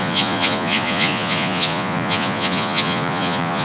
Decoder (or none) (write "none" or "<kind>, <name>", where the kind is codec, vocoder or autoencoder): vocoder, Vocos